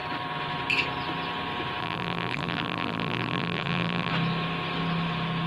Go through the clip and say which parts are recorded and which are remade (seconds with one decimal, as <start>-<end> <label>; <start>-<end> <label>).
0.0-1.8 recorded; 1.8-4.1 remade; 4.1-5.5 recorded